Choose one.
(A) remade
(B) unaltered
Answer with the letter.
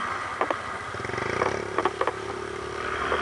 B